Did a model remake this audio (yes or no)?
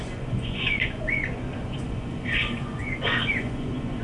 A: yes